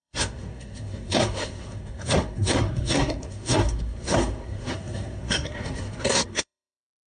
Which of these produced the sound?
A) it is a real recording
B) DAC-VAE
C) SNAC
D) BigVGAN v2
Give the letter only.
C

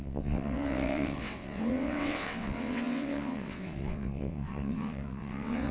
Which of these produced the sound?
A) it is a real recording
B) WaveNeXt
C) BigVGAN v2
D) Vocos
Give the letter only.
B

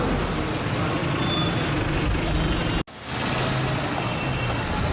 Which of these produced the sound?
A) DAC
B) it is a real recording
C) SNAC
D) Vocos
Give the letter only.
B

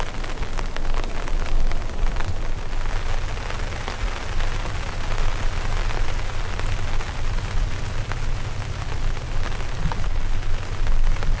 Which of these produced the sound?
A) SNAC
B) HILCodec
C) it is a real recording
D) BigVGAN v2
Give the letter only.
C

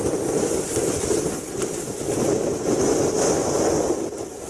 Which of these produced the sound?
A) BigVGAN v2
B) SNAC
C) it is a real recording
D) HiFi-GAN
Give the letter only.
C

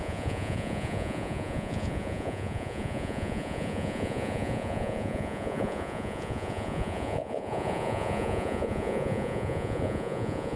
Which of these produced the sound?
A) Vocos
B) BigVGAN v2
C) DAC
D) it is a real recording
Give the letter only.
A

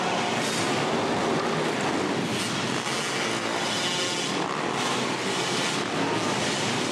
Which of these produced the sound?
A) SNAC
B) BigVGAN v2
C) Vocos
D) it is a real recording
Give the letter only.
D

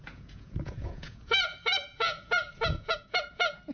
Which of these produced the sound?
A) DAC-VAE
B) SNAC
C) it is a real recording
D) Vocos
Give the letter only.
D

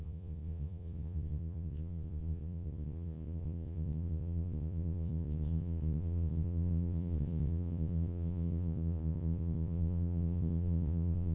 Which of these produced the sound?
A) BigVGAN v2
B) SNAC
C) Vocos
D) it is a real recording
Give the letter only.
C